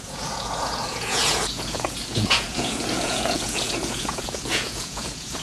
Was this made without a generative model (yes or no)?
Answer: no